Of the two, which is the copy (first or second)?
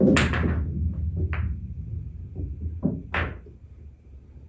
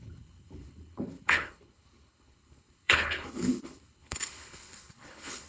second